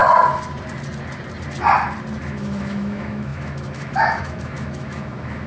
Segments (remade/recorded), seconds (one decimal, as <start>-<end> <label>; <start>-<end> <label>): 0.0-2.2 recorded; 2.2-5.5 remade